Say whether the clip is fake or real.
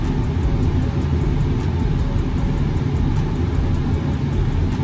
real